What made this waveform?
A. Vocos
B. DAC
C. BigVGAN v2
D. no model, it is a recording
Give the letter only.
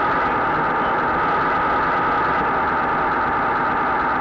D